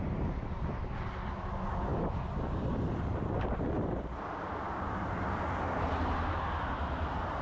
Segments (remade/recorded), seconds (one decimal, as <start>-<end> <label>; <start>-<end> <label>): 0.0-7.4 remade